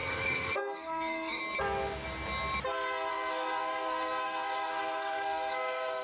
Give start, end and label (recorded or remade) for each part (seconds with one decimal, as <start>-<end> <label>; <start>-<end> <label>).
0.0-1.4 remade; 1.4-3.1 recorded; 3.1-6.0 remade